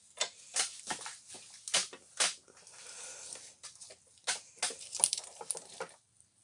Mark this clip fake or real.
real